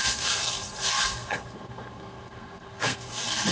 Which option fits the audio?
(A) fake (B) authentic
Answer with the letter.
A